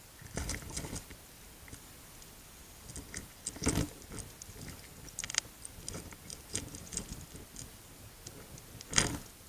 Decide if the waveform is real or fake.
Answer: real